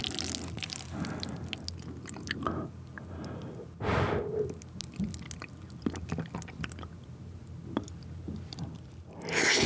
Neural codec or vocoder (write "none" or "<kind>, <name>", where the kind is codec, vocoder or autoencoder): none